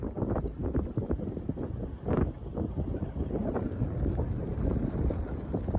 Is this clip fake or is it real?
real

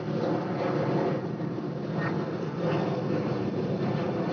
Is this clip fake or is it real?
real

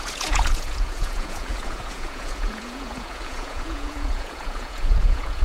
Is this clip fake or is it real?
fake